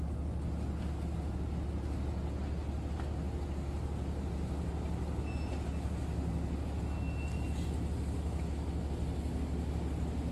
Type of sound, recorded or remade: recorded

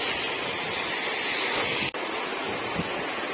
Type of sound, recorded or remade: recorded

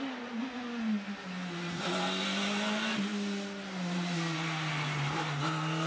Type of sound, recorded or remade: recorded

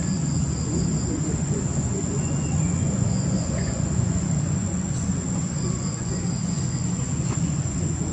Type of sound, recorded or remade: remade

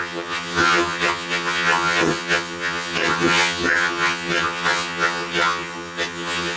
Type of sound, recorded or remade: remade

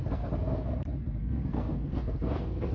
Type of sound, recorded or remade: remade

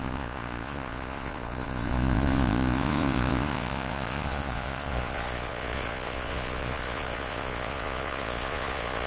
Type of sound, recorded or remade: remade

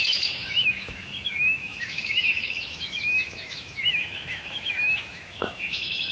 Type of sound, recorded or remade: remade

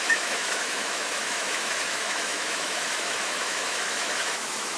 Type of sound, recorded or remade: remade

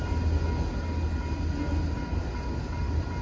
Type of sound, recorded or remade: recorded